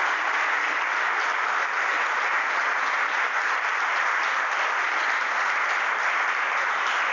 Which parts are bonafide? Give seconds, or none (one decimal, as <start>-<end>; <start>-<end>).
0.0-7.1